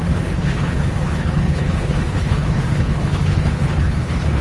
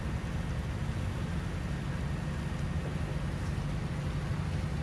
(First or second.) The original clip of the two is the second